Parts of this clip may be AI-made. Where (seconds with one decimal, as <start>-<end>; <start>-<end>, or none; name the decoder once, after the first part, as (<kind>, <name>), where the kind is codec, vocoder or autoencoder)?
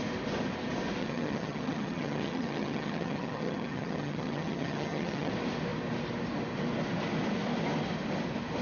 1.0-5.3 (vocoder, HiFi-GAN)